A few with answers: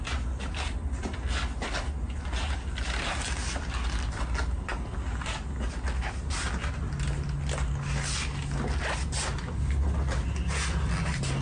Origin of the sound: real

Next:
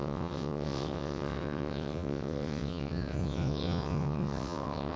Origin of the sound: fake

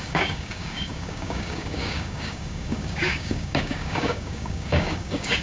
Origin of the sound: fake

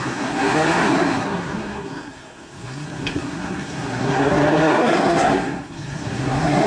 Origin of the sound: fake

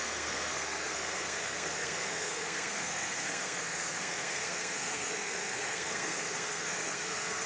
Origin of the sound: fake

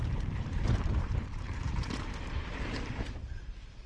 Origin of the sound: fake